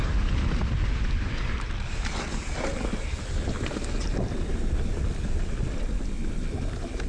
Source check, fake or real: real